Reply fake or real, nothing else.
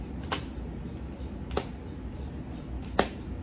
real